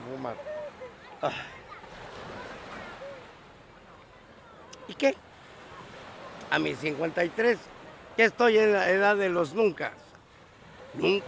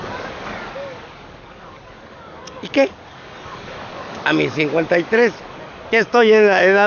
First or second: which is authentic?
first